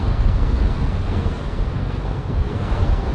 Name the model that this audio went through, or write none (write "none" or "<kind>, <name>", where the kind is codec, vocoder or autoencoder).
codec, SNAC